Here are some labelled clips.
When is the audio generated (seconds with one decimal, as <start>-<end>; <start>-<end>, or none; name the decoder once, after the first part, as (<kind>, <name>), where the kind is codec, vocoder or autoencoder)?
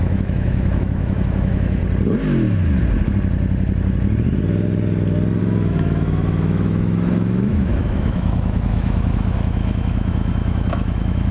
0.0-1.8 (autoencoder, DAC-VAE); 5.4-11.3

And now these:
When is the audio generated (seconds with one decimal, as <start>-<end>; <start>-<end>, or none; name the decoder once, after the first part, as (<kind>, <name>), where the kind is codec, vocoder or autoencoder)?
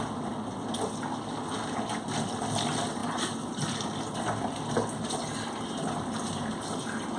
none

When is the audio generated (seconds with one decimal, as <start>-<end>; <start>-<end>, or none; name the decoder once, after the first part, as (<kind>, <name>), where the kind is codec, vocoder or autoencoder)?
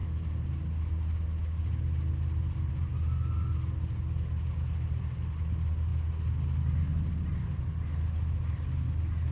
none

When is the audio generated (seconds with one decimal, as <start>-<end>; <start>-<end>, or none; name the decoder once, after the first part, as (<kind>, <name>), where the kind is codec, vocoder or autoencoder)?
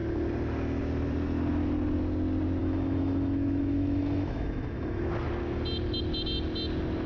2.6-5.1 (autoencoder, DAC-VAE)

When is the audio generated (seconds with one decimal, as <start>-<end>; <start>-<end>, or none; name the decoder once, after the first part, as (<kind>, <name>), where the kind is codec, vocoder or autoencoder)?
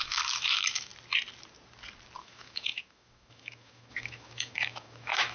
0.0-0.9 (autoencoder, DAC-VAE); 2.2-5.3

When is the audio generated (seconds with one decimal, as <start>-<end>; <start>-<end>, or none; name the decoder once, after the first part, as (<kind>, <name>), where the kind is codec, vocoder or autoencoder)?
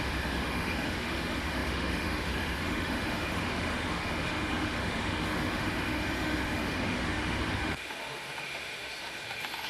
0.0-9.7 (autoencoder, DAC-VAE)